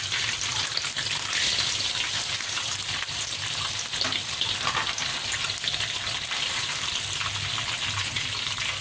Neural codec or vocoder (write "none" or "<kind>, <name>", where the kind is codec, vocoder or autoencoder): none